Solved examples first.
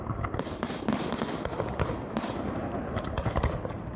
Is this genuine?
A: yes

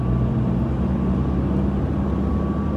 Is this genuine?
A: yes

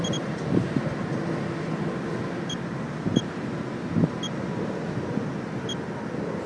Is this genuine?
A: yes